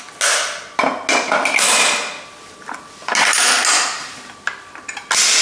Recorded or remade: recorded